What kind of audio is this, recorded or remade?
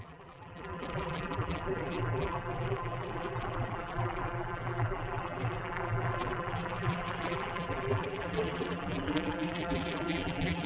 remade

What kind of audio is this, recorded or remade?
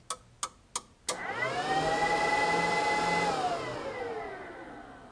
recorded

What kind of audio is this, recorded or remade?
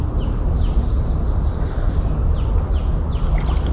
recorded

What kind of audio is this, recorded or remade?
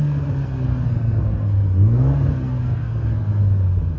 remade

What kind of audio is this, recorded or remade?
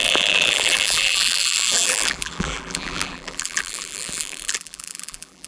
remade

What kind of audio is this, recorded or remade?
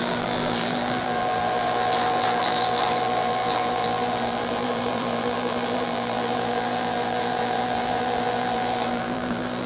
remade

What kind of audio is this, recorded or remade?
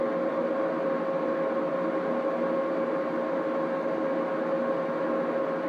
recorded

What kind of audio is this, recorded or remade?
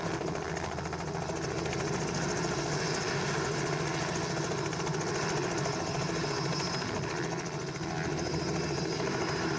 recorded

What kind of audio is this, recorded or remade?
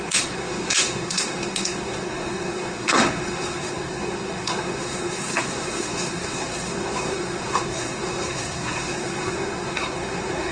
remade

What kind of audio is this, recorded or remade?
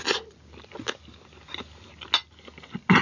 recorded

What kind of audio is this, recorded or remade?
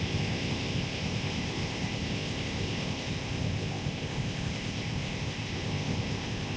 remade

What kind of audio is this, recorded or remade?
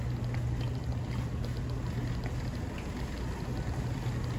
recorded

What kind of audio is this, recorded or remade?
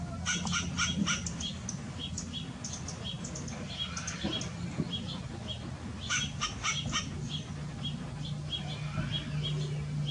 recorded